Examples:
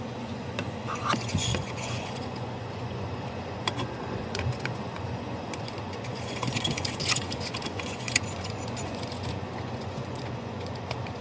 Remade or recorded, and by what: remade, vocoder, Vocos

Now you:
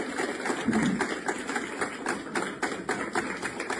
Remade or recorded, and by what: recorded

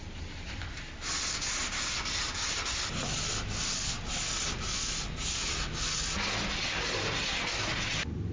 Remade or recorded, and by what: recorded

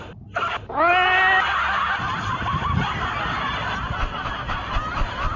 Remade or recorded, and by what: recorded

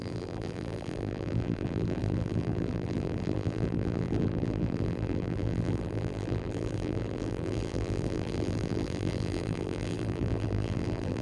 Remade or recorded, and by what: remade, vocoder, BigVGAN v2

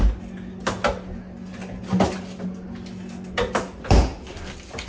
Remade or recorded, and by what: recorded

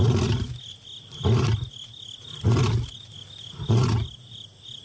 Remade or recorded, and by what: recorded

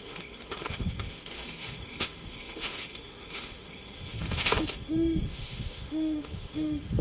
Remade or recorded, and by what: remade, autoencoder, DAC-VAE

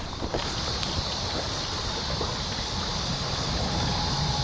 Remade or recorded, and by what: recorded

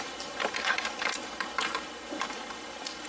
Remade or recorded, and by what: remade, vocoder, BigVGAN v2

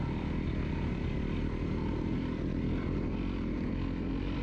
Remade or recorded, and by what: remade, vocoder, BigVGAN v2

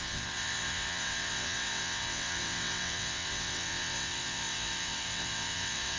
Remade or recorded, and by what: remade, vocoder, WaveNeXt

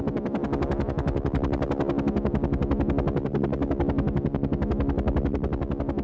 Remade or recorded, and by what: recorded